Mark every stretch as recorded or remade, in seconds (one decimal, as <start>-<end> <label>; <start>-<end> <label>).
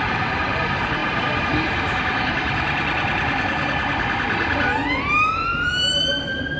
0.0-6.6 remade